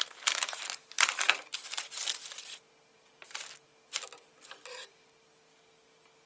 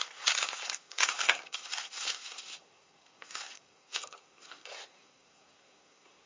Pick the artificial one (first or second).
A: second